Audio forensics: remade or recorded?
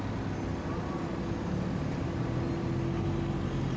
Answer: recorded